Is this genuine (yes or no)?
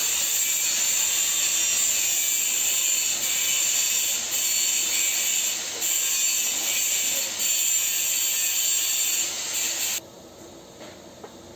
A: yes